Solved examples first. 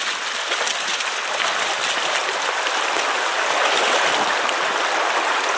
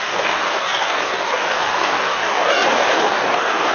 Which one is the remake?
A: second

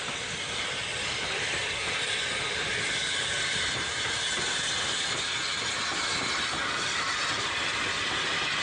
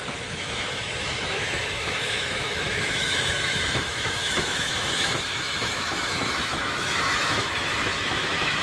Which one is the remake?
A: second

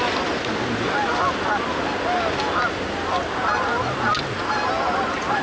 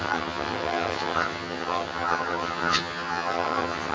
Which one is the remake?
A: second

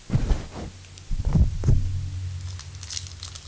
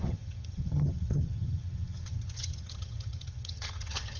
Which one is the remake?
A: second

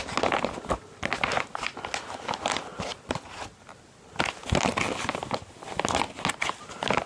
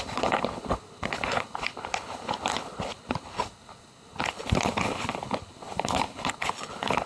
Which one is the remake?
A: second